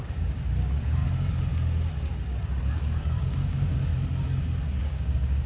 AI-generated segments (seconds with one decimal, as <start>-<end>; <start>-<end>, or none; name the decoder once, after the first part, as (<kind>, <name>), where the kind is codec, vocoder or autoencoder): 0.0-1.0 (codec, DAC); 2.6-3.9; 4.8-5.5